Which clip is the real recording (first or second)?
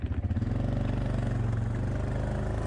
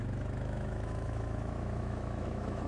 first